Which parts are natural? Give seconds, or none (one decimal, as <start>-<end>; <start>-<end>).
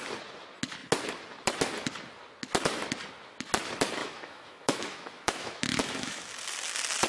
0.0-4.0; 6.3-7.1